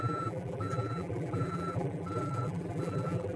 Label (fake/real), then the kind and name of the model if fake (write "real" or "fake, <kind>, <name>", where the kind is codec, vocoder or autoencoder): fake, vocoder, BigVGAN v2